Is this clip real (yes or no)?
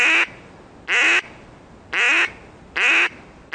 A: yes